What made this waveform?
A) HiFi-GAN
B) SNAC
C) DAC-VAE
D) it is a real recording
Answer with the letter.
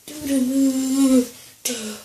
D